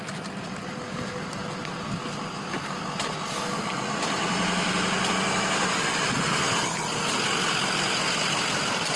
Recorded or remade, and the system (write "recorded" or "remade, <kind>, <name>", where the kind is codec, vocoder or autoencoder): recorded